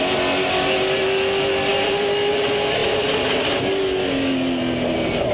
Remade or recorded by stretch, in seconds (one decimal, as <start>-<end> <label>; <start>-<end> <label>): 0.0-5.3 recorded